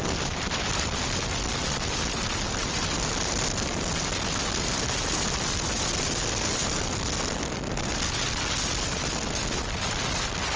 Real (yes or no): yes